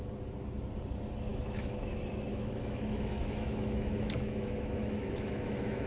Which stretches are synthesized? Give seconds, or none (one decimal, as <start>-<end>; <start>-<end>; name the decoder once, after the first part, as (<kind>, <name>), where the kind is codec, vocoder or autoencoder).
1.3-1.9 (autoencoder, DAC-VAE); 2.3-5.9